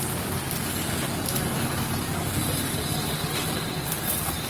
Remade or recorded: recorded